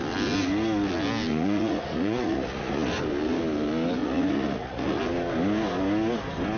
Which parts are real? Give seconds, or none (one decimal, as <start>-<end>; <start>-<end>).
0.0-1.3; 3.0-4.0; 5.0-6.6